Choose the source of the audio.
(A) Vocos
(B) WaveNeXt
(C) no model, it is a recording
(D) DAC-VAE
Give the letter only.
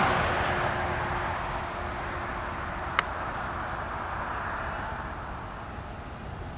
C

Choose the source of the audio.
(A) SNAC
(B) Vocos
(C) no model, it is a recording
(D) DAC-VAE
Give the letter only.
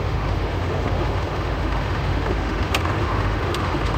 D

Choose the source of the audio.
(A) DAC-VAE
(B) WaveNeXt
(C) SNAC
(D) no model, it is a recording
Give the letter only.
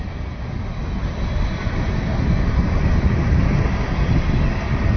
D